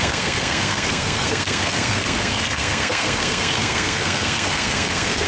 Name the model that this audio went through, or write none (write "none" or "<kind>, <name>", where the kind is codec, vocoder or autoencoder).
codec, SNAC